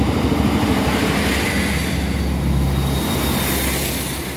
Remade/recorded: recorded